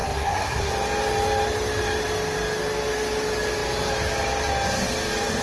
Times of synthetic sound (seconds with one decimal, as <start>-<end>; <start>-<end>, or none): 0.0-0.7

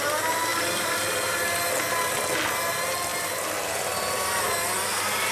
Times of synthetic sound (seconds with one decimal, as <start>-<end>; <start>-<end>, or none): none

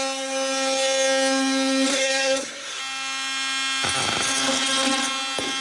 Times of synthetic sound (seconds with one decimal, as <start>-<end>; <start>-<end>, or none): 1.9-2.8

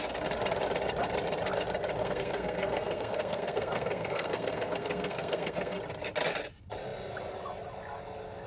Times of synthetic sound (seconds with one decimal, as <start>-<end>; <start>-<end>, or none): 2.0-5.8

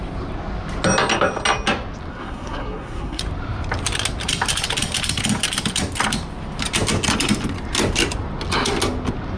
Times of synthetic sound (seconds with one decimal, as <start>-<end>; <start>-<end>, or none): 2.1-3.2